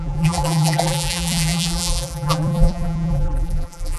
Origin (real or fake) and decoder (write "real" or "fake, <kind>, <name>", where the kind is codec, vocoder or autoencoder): fake, vocoder, BigVGAN v2